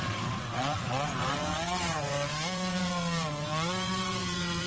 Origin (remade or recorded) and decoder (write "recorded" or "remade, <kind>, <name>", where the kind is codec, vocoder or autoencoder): remade, vocoder, WaveNeXt